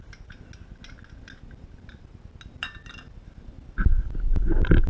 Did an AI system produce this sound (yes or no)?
no